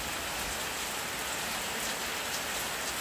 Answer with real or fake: real